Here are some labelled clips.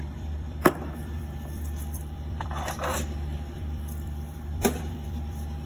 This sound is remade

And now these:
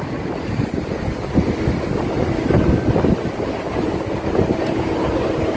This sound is recorded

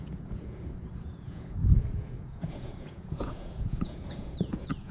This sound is remade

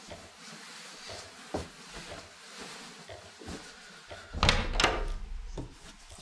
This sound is recorded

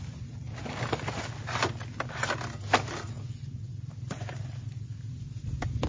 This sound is recorded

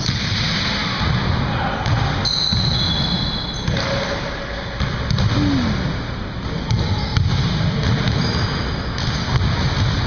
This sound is recorded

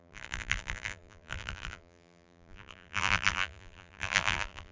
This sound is remade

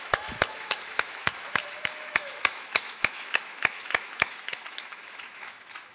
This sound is remade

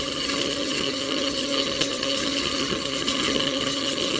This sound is remade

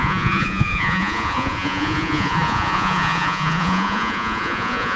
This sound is remade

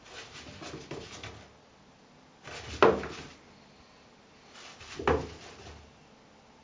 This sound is recorded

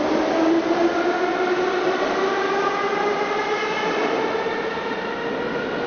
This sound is recorded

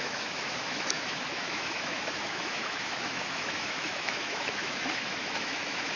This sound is remade